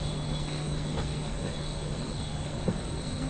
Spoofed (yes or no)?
yes